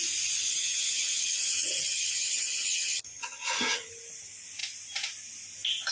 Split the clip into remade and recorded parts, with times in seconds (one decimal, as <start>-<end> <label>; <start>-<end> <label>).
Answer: 0.0-0.4 recorded; 0.4-3.9 remade; 3.9-5.9 recorded